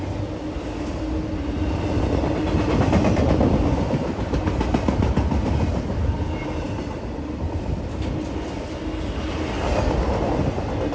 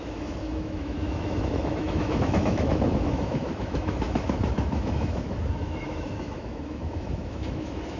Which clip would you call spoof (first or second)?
second